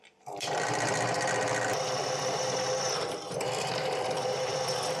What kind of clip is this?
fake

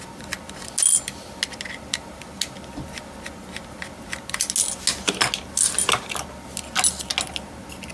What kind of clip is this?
real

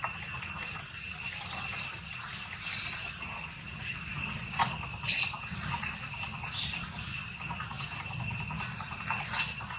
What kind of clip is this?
real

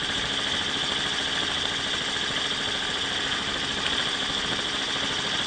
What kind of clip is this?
real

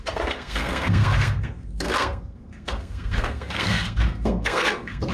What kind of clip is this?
fake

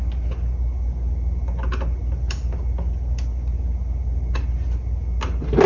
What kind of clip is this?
real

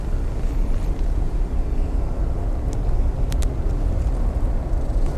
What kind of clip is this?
real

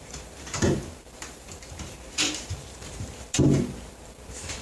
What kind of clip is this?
fake